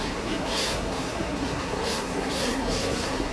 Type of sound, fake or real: fake